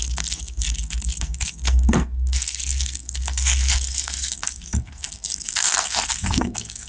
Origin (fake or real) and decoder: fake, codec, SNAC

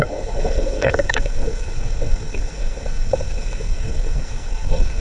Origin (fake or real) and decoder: fake, codec, SNAC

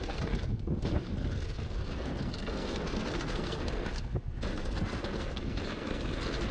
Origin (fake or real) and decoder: fake, codec, SNAC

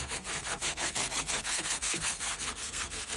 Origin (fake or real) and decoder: fake, codec, SNAC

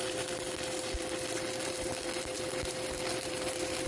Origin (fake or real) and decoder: real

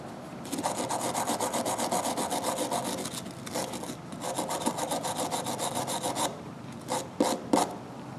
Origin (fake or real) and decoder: real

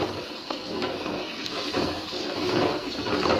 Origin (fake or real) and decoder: fake, codec, SNAC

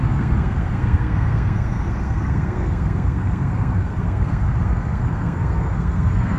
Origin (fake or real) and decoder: fake, codec, SNAC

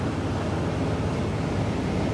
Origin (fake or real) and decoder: real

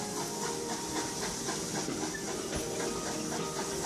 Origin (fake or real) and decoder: real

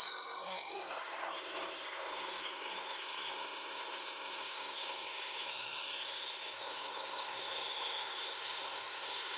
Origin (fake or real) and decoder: fake, codec, SNAC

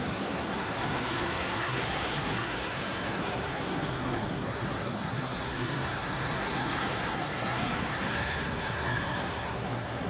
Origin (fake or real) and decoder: fake, codec, SNAC